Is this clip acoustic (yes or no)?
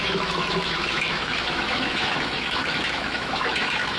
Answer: no